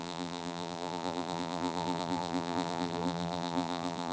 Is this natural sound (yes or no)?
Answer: no